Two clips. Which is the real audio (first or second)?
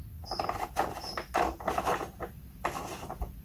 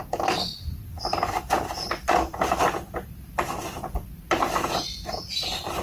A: first